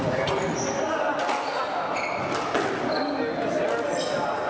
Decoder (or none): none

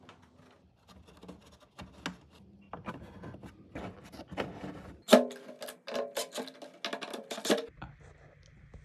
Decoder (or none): none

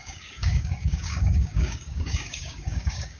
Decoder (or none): codec, DAC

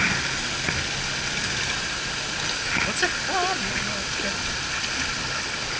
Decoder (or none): none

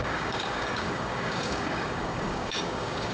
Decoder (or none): codec, DAC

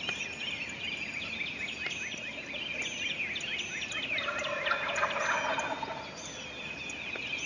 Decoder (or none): none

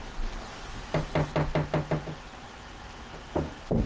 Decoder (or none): none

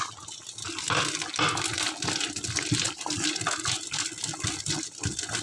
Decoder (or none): none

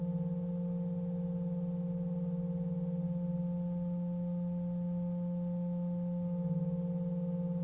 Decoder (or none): none